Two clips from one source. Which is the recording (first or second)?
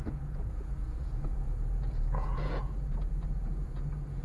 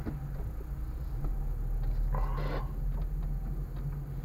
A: second